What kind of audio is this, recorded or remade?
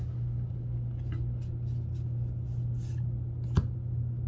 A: recorded